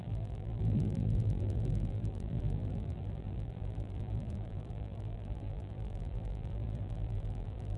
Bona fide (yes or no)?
no